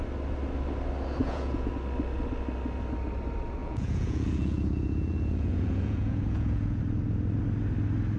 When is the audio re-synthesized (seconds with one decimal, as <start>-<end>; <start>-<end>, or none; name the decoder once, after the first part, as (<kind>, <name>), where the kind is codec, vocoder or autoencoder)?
1.2-1.7 (vocoder, Vocos); 3.6-6.8